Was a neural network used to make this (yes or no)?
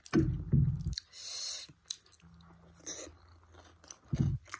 no